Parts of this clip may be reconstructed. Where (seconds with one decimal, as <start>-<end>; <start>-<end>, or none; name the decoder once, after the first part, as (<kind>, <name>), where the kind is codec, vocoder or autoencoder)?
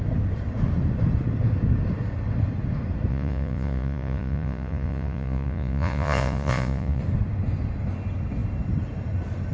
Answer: 3.1-7.0 (vocoder, Vocos)